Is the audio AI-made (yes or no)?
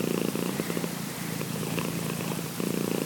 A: yes